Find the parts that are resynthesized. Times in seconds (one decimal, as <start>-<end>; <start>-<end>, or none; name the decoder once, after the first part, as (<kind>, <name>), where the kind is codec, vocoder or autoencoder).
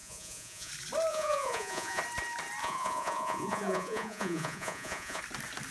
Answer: 0.0-0.7 (vocoder, Vocos); 1.1-2.0; 2.6-5.2